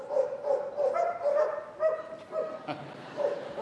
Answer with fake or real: real